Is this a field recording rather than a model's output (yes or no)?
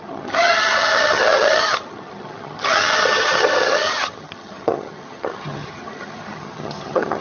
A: no